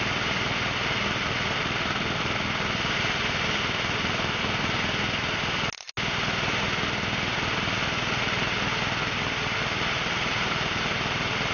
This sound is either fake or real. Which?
real